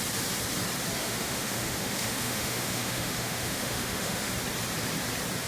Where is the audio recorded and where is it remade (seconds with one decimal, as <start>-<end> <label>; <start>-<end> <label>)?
0.0-1.0 recorded; 1.0-4.3 remade; 4.3-5.5 recorded